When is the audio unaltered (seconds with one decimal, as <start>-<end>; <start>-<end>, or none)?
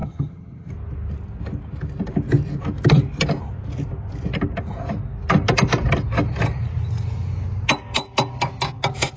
0.7-9.2